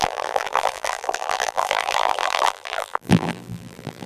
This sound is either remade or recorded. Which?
remade